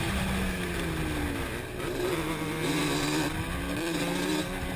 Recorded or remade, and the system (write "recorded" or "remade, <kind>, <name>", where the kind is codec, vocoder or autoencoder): recorded